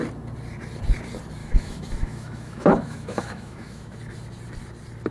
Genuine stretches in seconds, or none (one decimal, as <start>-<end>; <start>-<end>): 0.0-1.4; 4.0-5.1